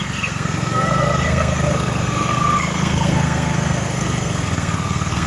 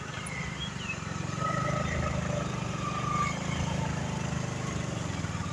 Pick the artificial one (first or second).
first